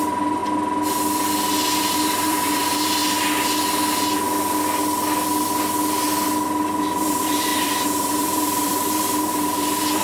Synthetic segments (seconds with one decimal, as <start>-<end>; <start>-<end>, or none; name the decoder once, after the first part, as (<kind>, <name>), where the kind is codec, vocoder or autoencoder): 0.0-0.4 (vocoder, BigVGAN v2); 1.8-3.0; 6.8-10.0